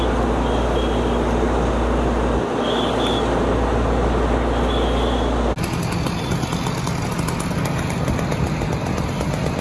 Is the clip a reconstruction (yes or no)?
no